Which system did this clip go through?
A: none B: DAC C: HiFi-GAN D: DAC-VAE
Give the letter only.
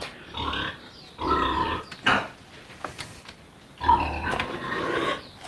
A